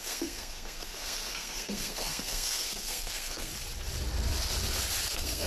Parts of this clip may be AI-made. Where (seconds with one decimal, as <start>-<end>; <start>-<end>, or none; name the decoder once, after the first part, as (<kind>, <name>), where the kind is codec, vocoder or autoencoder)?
0.0-3.5 (codec, SNAC); 5.1-5.5